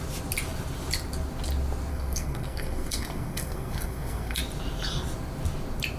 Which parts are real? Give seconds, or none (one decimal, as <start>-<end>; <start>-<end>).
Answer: 0.0-1.9; 4.4-6.0